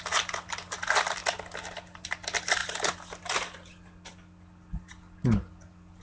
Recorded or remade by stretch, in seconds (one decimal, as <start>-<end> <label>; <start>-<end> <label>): 0.0-6.0 recorded